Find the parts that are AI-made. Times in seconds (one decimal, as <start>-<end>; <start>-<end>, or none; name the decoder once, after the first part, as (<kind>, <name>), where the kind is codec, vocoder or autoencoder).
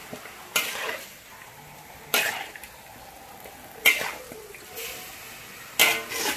none